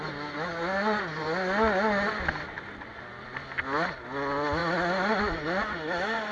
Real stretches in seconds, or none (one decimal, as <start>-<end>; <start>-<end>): 0.0-6.3